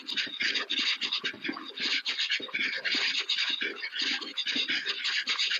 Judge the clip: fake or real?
real